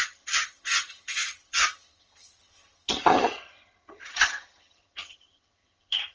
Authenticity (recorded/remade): remade